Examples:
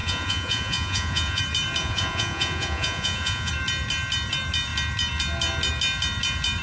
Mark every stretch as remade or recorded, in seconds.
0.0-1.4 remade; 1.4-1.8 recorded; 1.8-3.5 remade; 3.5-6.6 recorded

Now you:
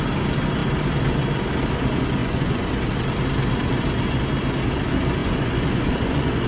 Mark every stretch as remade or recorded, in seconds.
0.0-2.2 recorded; 2.2-2.7 remade; 2.7-5.2 recorded; 5.2-6.5 remade